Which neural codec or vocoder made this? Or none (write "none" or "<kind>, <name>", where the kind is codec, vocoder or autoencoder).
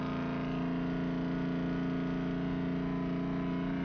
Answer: none